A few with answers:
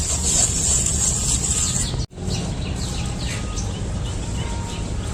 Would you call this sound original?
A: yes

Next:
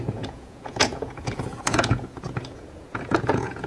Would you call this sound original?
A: no